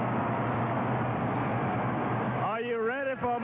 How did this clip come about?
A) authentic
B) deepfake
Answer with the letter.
A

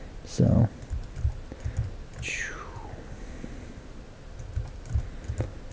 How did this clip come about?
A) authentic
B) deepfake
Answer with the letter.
A